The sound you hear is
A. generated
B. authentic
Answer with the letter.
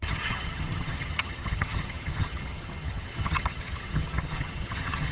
A